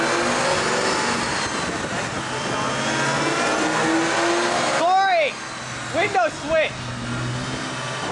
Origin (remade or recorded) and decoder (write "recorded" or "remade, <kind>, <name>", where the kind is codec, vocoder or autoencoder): recorded